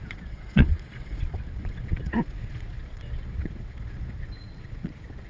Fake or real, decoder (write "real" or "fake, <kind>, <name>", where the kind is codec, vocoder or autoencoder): fake, vocoder, Vocos